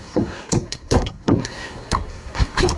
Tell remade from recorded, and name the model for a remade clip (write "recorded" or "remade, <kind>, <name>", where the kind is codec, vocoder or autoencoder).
remade, codec, SNAC